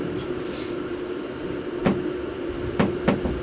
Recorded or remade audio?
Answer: recorded